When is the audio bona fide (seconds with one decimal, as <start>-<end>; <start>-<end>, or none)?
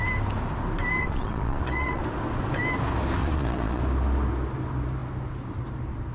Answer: 0.0-1.0; 2.0-3.2; 3.8-6.1